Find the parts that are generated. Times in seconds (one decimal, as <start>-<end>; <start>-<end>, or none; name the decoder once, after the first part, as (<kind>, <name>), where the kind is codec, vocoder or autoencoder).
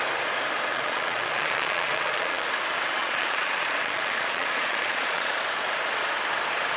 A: 0.7-2.5 (vocoder, Vocos); 3.0-5.4